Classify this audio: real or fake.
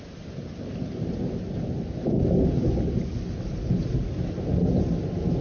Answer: real